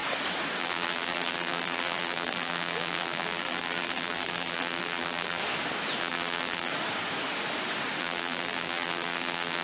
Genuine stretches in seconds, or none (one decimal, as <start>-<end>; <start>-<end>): 0.0-0.6; 5.4-6.0; 6.7-8.0